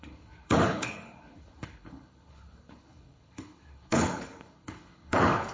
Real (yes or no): no